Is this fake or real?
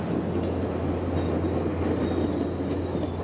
real